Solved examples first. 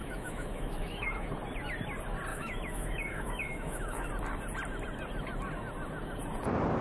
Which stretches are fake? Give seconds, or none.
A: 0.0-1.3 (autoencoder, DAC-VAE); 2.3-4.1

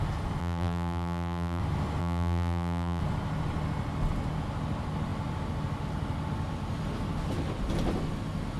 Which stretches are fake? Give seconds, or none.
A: 0.4-1.6 (vocoder, BigVGAN v2); 2.0-3.0

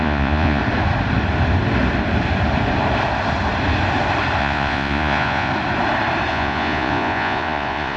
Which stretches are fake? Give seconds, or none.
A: 0.0-0.6 (vocoder, Vocos); 4.4-5.5; 6.3-8.0

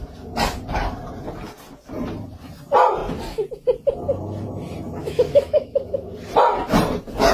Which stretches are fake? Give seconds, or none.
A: 5.0-6.1 (autoencoder, DAC-VAE)

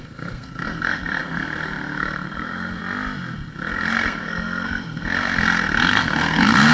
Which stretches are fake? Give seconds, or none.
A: 0.0-2.8 (codec, SNAC); 3.5-6.7

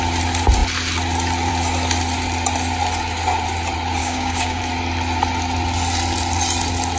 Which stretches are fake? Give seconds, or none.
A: 4.0-4.6 (codec, DAC)

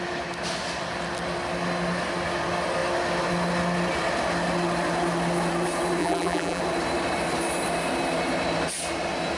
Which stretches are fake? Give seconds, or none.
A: 6.0-6.6 (vocoder, BigVGAN v2)

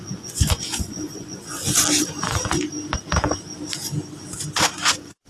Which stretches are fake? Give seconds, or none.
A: 0.0-1.6 (vocoder, Vocos); 4.8-5.3